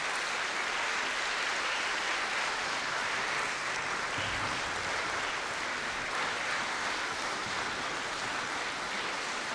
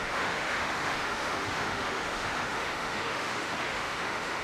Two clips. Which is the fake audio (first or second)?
second